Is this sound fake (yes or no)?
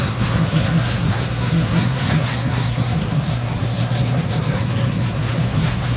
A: yes